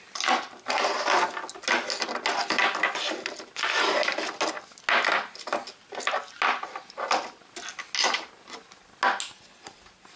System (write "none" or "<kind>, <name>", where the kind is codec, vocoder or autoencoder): none